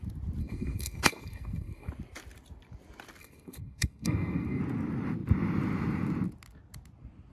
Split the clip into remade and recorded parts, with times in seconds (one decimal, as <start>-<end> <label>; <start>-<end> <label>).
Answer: 0.0-0.4 recorded; 0.4-1.9 remade; 1.9-3.2 recorded; 3.2-4.6 remade; 4.6-7.3 recorded